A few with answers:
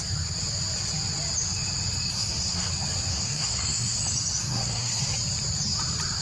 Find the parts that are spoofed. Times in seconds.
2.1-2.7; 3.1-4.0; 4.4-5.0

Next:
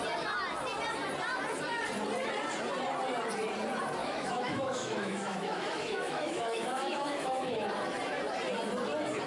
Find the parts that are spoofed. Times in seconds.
4.0-7.7

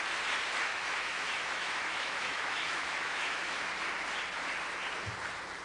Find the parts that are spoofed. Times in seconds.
0.7-3.7

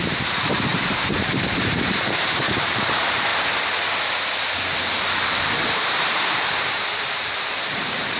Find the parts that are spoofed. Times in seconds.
0.0-3.3; 5.3-8.2

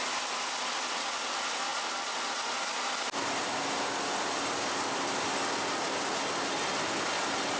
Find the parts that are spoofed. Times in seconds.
none

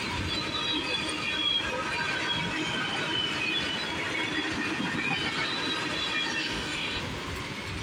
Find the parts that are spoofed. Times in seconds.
6.4-7.0